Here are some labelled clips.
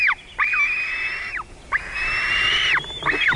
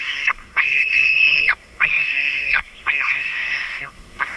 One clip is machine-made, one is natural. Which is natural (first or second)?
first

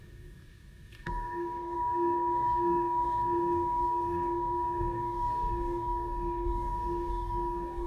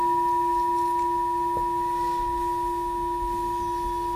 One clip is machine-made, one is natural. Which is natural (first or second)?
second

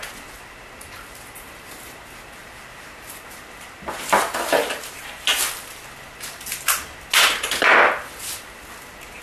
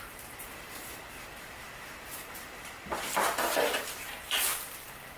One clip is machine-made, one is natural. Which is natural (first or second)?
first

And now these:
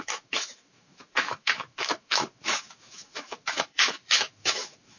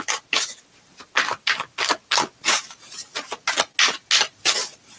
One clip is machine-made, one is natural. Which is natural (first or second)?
second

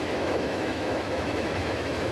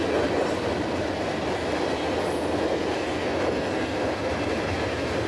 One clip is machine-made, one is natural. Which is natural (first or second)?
second